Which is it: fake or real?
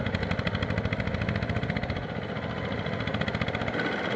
real